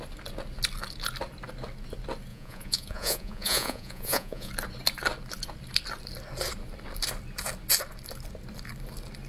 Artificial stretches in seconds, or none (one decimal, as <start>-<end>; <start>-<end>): 2.3-4.5